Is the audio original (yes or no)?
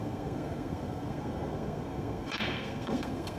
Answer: no